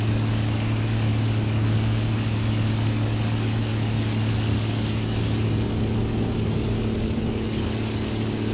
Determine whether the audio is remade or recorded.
remade